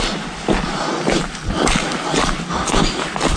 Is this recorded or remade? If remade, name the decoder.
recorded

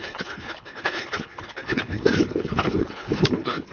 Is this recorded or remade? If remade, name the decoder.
remade, codec, HILCodec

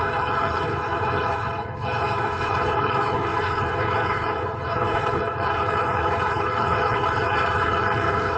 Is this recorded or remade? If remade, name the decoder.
remade, codec, HILCodec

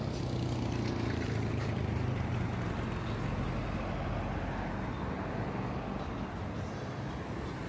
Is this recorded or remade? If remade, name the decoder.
recorded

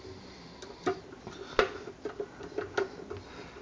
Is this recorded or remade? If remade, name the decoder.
recorded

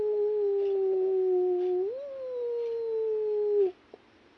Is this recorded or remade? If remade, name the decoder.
recorded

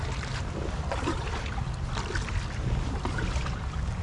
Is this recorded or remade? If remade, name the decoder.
recorded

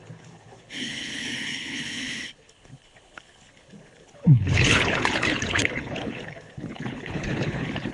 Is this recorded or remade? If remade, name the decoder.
remade, codec, HILCodec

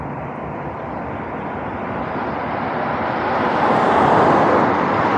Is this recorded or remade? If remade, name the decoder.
recorded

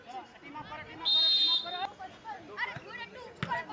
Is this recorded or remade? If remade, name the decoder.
recorded